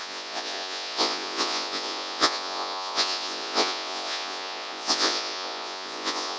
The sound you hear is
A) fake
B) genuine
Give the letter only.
A